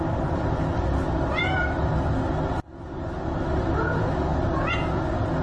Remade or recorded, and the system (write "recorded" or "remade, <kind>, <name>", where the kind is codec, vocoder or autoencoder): recorded